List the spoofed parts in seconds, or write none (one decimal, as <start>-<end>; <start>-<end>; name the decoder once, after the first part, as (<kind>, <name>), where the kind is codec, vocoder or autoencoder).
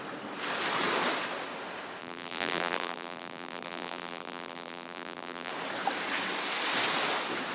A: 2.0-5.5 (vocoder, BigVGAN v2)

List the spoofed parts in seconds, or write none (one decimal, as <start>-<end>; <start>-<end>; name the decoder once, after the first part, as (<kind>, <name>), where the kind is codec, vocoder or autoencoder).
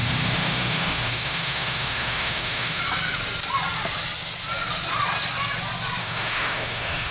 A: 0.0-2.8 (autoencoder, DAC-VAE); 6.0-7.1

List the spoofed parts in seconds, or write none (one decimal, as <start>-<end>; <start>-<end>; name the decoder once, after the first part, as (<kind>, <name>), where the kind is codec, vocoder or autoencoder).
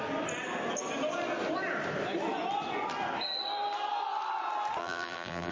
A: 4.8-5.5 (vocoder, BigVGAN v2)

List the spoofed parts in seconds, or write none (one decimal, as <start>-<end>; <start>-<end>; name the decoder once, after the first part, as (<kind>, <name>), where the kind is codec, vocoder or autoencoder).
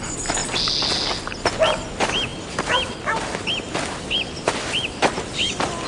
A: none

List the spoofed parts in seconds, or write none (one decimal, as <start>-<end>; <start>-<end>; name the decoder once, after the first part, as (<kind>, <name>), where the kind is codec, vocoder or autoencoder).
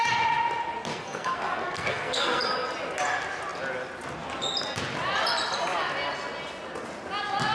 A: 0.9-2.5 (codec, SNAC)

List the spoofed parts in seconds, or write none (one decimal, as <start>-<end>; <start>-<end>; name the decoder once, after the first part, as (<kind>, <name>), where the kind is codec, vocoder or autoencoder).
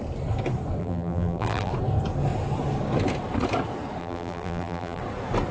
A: 0.8-1.7 (vocoder, BigVGAN v2); 4.0-5.0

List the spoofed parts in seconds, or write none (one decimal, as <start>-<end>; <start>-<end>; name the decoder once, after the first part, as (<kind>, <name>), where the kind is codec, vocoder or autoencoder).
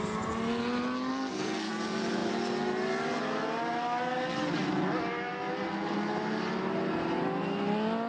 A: 1.1-1.7 (codec, SNAC)